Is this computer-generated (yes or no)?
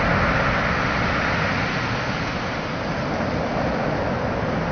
no